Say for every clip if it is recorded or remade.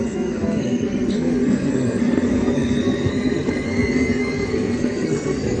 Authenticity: remade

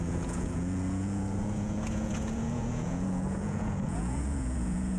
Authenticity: remade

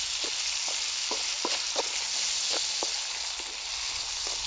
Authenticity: recorded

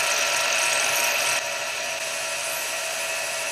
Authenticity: recorded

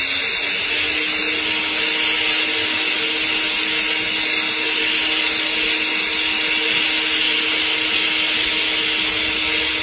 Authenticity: recorded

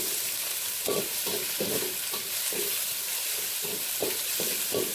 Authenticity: recorded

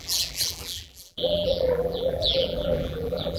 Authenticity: remade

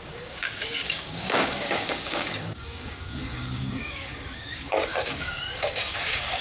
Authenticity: remade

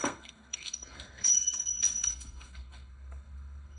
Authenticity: remade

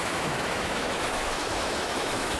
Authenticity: remade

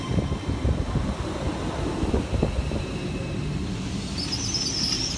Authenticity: recorded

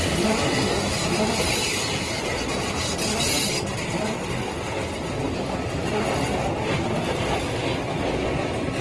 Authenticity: recorded